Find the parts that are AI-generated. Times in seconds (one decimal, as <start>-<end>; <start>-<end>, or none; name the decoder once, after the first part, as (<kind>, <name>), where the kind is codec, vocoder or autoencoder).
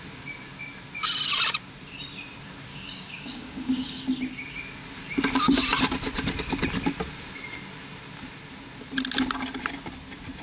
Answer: 2.7-4.0 (codec, DAC)